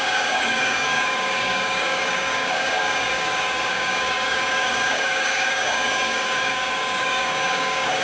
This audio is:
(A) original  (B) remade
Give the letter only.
B